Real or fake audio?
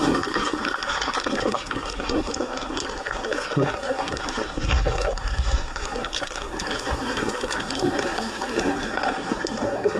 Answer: fake